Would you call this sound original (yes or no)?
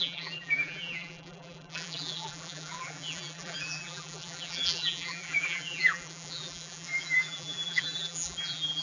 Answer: no